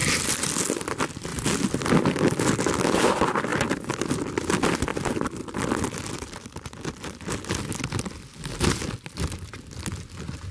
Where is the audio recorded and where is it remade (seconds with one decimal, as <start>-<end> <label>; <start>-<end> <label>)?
0.0-0.5 remade; 0.5-1.3 recorded; 1.3-1.9 remade; 1.9-4.9 recorded; 4.9-5.7 remade; 5.7-10.5 recorded